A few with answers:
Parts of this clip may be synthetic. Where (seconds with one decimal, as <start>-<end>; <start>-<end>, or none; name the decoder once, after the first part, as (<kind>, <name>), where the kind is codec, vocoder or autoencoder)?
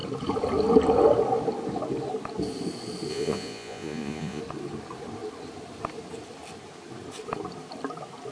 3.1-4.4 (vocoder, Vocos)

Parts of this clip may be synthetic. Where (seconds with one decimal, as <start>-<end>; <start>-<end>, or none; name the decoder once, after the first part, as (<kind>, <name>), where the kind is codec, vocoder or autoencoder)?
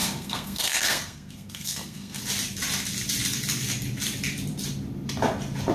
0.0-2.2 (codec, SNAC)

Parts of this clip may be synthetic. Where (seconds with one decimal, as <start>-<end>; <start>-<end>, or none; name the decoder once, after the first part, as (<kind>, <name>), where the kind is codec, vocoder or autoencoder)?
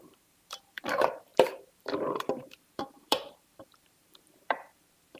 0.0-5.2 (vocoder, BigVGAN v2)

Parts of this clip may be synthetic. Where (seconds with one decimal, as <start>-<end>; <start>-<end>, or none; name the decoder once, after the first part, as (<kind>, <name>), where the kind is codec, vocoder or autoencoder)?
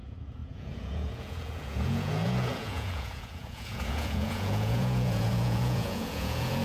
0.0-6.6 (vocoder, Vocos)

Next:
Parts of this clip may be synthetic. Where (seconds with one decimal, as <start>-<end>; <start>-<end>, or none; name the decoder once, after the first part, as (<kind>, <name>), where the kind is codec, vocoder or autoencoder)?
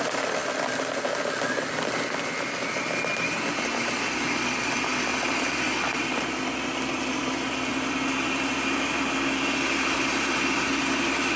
none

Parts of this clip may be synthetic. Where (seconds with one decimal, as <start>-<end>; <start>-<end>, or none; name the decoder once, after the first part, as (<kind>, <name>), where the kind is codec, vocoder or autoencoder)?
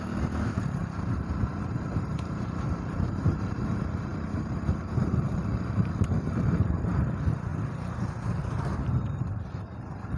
0.0-7.5 (vocoder, BigVGAN v2); 8.3-10.2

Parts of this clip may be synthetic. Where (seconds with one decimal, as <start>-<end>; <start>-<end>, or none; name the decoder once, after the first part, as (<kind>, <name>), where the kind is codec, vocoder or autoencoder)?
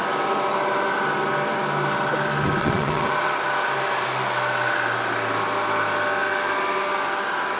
2.6-3.4 (vocoder, WaveNeXt)